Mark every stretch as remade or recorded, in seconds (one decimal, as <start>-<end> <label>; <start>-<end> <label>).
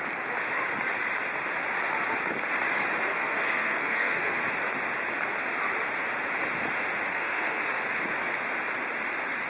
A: 0.0-3.1 recorded; 3.1-4.4 remade; 4.4-7.1 recorded; 7.1-7.8 remade; 7.8-9.5 recorded